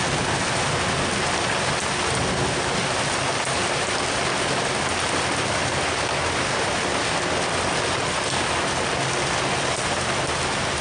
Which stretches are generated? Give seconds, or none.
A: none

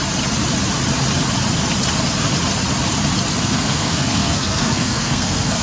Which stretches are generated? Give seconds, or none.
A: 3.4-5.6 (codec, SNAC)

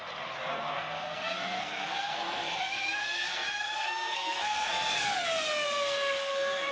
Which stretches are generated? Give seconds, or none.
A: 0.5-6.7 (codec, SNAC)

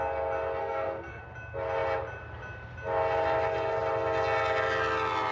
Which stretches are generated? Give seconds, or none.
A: 0.6-1.2 (codec, SNAC)

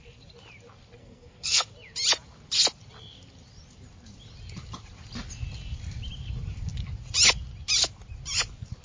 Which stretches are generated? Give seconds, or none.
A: 1.0-1.7 (codec, SNAC)

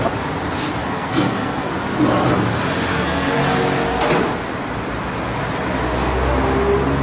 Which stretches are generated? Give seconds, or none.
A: 0.8-1.7 (codec, SNAC); 2.9-3.4

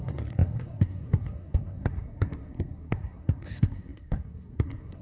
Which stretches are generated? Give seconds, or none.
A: 0.0-5.0 (codec, SNAC)